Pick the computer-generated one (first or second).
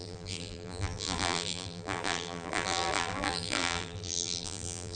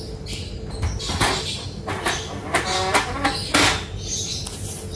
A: first